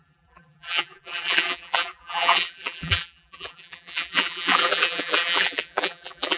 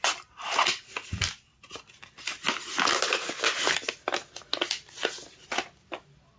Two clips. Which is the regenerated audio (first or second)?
first